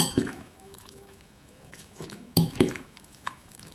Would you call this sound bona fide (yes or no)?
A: no